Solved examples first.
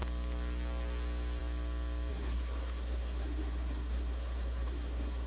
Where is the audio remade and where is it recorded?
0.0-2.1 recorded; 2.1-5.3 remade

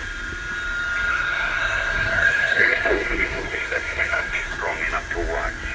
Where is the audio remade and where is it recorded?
0.0-1.1 recorded; 1.1-4.5 remade; 4.5-5.7 recorded

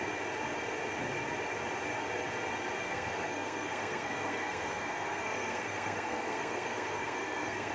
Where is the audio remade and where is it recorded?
0.0-2.8 recorded; 2.8-7.7 remade

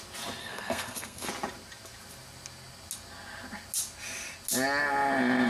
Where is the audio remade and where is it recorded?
0.0-0.4 recorded; 0.4-1.3 remade; 1.3-5.5 recorded

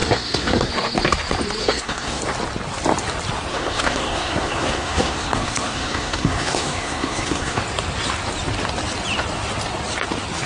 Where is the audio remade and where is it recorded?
0.0-0.7 remade; 0.7-1.6 recorded; 1.6-2.2 remade; 2.2-3.5 recorded; 3.5-7.6 remade; 7.6-10.5 recorded

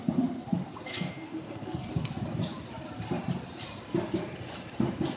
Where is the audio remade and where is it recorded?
0.0-0.9 recorded; 0.9-1.9 remade; 1.9-5.2 recorded

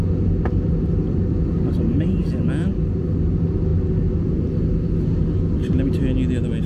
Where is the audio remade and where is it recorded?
0.0-6.7 recorded

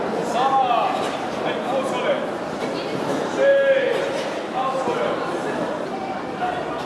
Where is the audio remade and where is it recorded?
0.0-6.9 recorded